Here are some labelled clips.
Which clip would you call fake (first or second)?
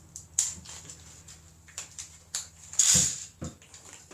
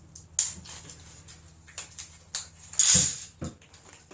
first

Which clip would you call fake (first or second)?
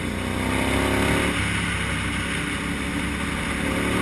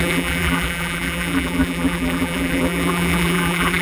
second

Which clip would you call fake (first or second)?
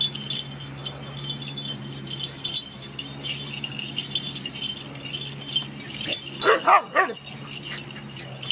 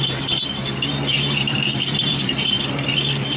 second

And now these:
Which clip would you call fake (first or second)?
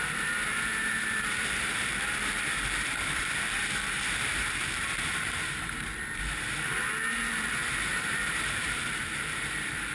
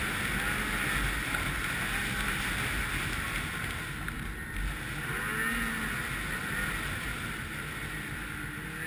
first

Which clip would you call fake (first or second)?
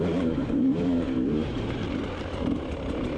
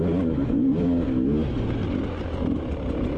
first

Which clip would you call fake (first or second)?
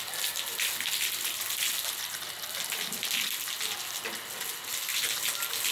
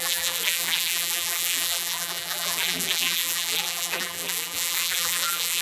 second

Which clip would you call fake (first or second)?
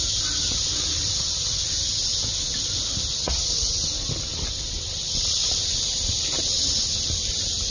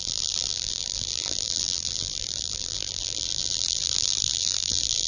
second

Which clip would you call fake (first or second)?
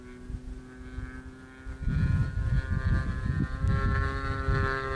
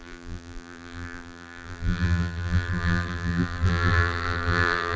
second